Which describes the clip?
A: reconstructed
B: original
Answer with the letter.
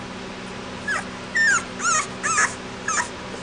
B